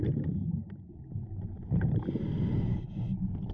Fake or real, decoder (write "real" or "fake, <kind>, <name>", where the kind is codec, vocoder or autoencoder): real